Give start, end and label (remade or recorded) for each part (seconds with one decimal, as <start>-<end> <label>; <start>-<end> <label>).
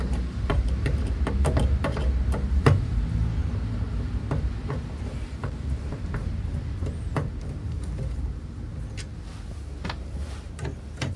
0.0-8.7 remade; 8.7-10.0 recorded; 10.0-11.2 remade